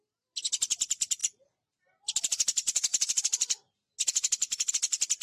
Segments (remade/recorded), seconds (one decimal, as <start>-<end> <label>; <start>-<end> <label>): 0.0-5.2 recorded